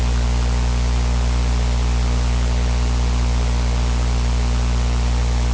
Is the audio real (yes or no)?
yes